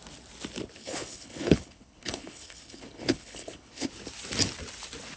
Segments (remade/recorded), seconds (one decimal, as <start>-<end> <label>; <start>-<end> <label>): 0.0-0.8 recorded; 0.8-3.9 remade; 3.9-5.2 recorded